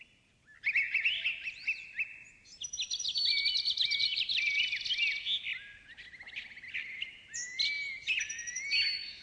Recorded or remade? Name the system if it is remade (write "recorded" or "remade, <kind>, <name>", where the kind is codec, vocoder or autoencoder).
recorded